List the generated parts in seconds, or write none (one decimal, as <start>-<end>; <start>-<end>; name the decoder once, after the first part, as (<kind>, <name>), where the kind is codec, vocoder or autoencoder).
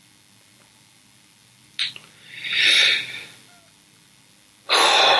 none